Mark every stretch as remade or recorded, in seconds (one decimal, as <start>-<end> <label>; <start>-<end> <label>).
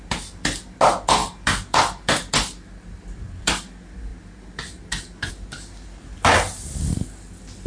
0.0-7.7 recorded